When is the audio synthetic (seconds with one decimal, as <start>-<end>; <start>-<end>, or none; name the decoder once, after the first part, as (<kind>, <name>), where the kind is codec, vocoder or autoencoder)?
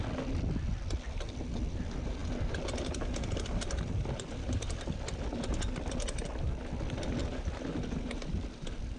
none